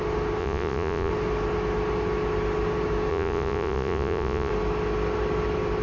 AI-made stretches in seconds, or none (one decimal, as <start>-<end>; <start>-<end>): 0.4-1.1; 3.1-4.5